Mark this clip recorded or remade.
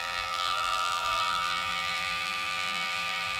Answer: remade